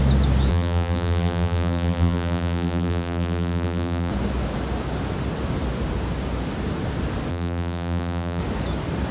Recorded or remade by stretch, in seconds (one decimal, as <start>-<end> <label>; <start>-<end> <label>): 0.0-0.5 recorded; 0.5-4.1 remade; 4.1-7.3 recorded; 7.3-8.4 remade; 8.4-9.1 recorded